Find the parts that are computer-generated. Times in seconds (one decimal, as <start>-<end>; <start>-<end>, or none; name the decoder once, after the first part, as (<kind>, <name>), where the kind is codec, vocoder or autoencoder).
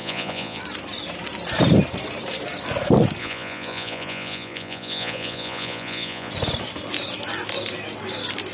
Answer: 0.0-0.6 (vocoder, Vocos); 3.2-6.3